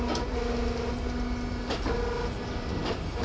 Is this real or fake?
real